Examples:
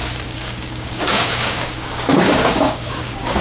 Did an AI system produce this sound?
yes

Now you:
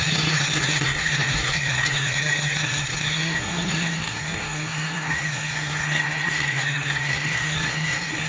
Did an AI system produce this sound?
yes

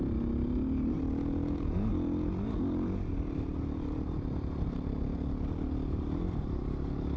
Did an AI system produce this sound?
no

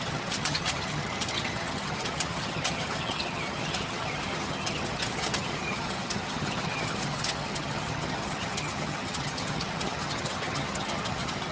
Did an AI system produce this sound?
yes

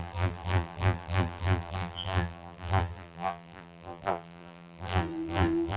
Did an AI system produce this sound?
yes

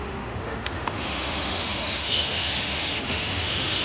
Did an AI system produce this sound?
yes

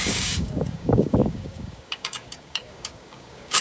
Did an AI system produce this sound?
yes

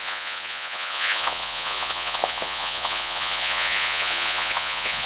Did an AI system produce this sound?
yes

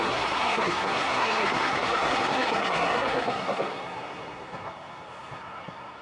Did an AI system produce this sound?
yes